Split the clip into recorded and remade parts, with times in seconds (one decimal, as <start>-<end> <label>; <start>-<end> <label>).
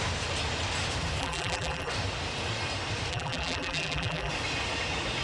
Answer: 0.0-1.2 recorded; 1.2-1.9 remade; 1.9-3.1 recorded; 3.1-4.3 remade; 4.3-5.2 recorded